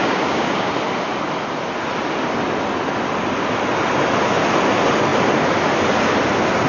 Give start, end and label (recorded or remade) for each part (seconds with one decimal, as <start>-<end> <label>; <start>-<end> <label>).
0.0-0.7 remade; 0.7-6.7 recorded